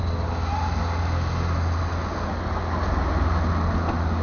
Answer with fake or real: real